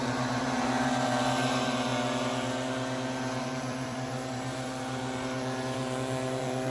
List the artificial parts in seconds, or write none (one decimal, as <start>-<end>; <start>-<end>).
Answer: 0.0-1.9; 3.4-6.7

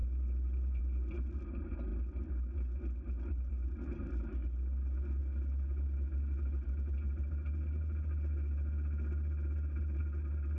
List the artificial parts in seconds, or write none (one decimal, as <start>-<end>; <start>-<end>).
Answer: none

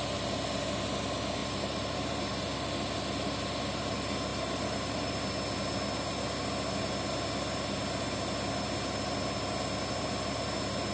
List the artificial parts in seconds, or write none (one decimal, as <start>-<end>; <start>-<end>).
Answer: 1.4-2.2; 4.3-5.1

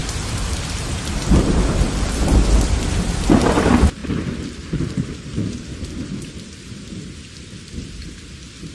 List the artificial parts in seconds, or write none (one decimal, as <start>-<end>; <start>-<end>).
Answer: 4.0-6.8

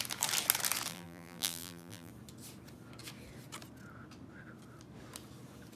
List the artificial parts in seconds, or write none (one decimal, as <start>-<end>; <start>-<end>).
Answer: 0.9-2.1